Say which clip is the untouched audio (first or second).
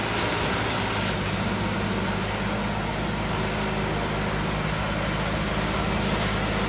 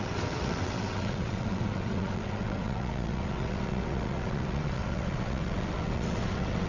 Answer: first